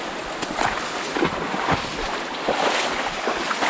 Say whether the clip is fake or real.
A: real